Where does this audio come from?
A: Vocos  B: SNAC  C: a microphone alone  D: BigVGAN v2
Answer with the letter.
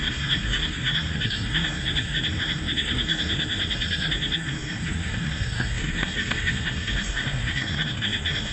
B